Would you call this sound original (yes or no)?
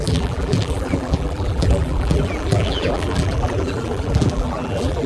no